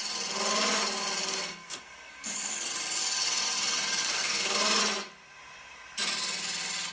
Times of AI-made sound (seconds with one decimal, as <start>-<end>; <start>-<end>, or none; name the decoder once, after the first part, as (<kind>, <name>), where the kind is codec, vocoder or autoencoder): 1.2-2.7 (codec, SNAC); 4.0-4.8